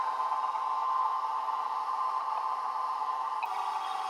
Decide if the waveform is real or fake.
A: real